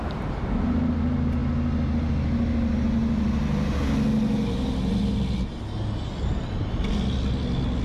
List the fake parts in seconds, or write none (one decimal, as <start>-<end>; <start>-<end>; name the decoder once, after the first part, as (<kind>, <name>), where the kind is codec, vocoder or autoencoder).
none